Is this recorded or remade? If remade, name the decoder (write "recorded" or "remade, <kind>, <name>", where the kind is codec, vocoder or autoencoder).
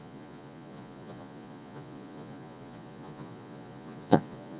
remade, vocoder, Vocos